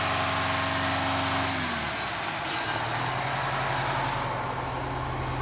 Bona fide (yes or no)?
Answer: yes